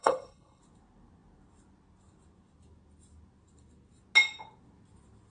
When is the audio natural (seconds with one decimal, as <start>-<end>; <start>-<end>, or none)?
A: 0.6-5.3